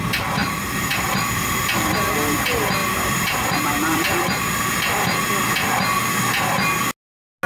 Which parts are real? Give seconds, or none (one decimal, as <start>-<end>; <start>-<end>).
0.0-0.4; 0.9-2.8; 5.2-7.5